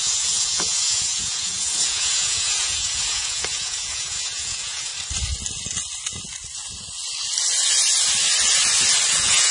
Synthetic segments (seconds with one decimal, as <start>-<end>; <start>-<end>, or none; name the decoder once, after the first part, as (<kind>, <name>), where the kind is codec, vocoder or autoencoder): 0.0-4.9 (vocoder, Vocos); 9.1-9.5